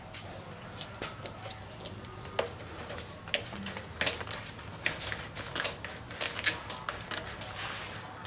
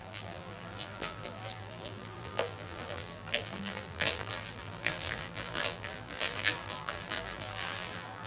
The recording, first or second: first